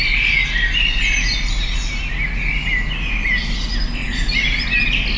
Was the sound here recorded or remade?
recorded